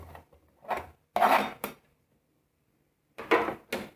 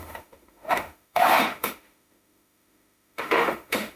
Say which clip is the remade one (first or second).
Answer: second